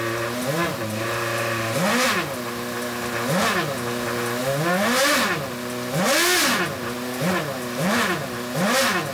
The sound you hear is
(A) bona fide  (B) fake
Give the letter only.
A